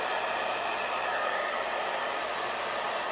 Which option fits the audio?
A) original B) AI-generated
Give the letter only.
B